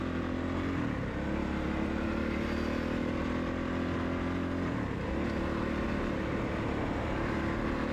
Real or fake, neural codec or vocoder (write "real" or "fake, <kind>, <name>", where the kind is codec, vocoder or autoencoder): real